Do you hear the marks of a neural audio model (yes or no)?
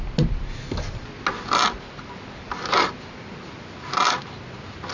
no